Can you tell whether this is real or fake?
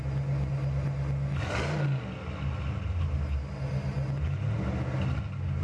real